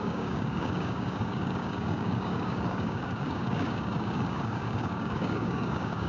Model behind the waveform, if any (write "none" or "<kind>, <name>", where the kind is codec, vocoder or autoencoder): codec, DAC